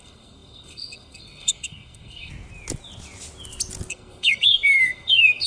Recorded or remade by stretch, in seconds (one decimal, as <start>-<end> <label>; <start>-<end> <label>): 0.0-2.3 remade; 2.3-3.9 recorded; 3.9-5.5 remade